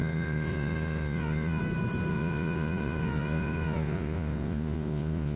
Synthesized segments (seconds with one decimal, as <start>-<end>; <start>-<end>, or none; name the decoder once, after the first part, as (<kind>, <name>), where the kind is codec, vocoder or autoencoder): 0.0-1.6 (vocoder, Vocos); 2.1-5.4